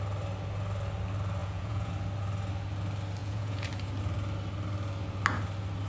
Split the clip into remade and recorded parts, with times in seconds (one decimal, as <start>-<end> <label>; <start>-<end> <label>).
0.0-1.4 recorded; 1.4-1.9 remade; 1.9-3.2 recorded; 3.2-3.7 remade; 3.7-5.9 recorded